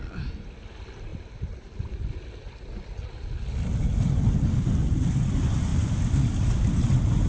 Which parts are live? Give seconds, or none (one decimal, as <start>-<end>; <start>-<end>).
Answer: 0.0-1.1; 2.4-5.7; 6.7-7.3